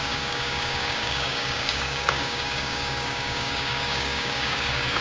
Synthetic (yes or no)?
yes